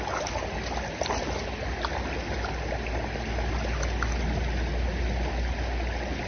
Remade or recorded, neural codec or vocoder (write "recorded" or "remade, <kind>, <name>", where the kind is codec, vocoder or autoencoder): recorded